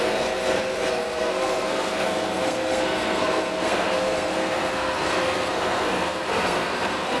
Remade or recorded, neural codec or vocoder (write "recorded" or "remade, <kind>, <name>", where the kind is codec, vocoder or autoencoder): remade, codec, SNAC